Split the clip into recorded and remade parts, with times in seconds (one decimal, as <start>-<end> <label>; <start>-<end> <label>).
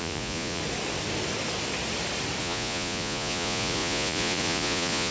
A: 0.0-0.6 remade; 0.6-2.4 recorded; 2.4-5.1 remade